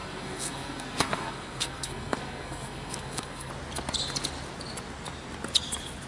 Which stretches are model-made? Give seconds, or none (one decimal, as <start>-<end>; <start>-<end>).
0.0-3.5